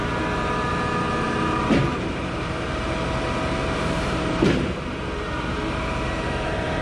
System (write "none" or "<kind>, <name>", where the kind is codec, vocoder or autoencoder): vocoder, BigVGAN v2